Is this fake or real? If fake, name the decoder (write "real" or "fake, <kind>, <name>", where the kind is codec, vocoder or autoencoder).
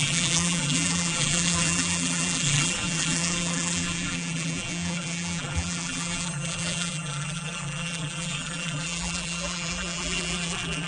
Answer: fake, vocoder, BigVGAN v2